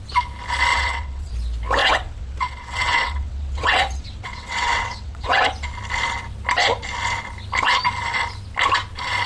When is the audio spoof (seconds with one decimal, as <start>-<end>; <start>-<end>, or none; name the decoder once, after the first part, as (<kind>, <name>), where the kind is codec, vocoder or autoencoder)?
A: 0.7-1.3 (vocoder, WaveNeXt); 1.8-5.4